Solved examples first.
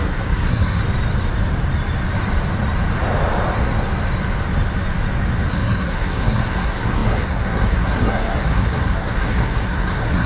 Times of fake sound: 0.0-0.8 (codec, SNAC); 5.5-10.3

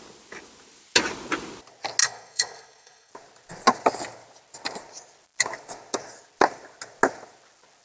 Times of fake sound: 2.0-3.1 (codec, SNAC)

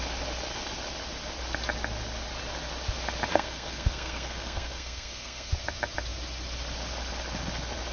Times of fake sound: 3.3-5.5 (codec, SNAC)

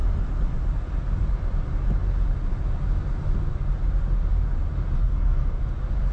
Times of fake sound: 5.0-5.6 (codec, SNAC)

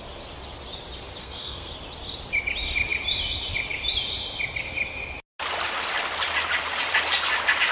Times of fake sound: 1.2-1.7 (codec, SNAC)